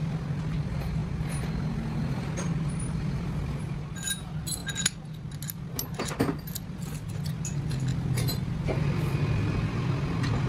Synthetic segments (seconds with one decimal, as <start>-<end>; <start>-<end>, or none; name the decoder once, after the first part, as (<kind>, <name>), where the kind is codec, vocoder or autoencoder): none